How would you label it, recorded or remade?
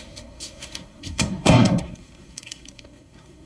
remade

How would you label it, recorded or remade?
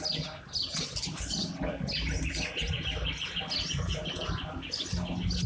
recorded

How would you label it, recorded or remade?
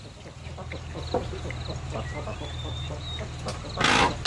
recorded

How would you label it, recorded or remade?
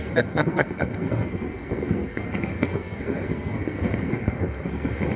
remade